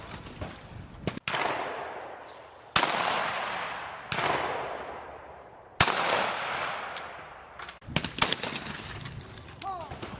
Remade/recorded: recorded